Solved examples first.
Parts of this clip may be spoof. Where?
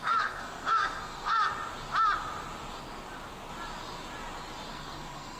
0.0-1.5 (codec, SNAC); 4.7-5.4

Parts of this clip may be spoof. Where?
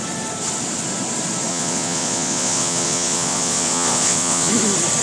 1.5-4.5 (vocoder, Vocos)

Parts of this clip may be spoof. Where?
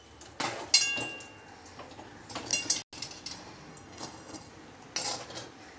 3.7-4.5 (codec, SNAC)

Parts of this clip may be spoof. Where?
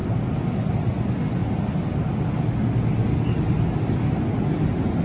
none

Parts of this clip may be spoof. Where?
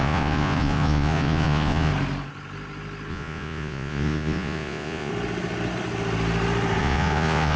0.0-1.9 (vocoder, Vocos); 3.1-5.1; 6.8-7.6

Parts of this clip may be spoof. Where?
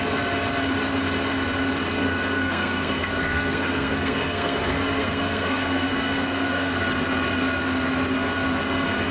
2.0-6.8 (codec, SNAC)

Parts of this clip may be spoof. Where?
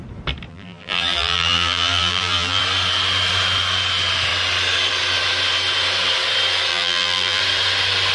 0.5-2.6 (vocoder, BigVGAN v2); 6.7-7.4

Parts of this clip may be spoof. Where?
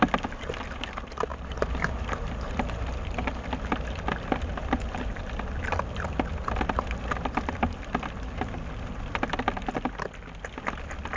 1.3-3.4 (vocoder, BigVGAN v2); 4.6-5.2